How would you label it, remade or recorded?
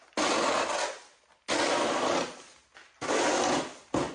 recorded